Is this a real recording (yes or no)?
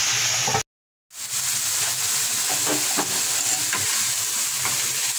yes